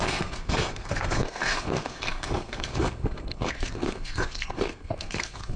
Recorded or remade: remade